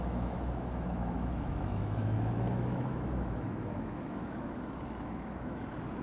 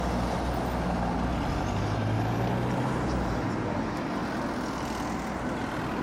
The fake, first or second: first